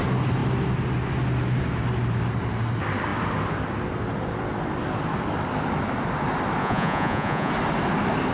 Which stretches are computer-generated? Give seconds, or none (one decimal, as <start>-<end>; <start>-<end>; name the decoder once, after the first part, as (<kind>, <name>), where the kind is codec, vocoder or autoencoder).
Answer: 6.6-7.5 (vocoder, Vocos)